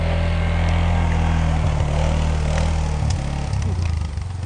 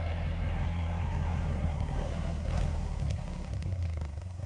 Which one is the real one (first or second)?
first